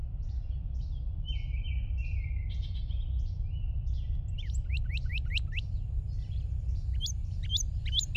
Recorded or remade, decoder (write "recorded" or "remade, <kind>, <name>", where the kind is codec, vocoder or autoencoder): recorded